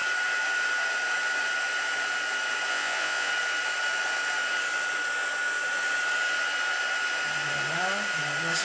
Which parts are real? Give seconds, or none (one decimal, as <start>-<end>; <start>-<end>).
0.0-2.7; 3.3-8.6